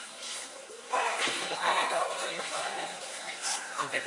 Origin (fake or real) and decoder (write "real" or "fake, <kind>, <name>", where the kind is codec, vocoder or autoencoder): fake, codec, SNAC